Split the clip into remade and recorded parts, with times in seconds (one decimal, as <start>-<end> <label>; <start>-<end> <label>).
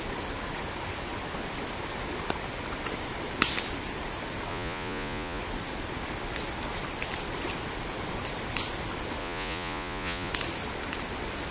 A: 0.0-4.5 recorded; 4.5-5.4 remade; 5.4-9.2 recorded; 9.2-10.3 remade; 10.3-11.5 recorded